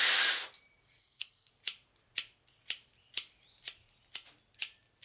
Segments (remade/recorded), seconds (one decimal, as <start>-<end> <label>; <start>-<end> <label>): 0.0-1.0 recorded; 1.0-1.5 remade; 1.5-5.0 recorded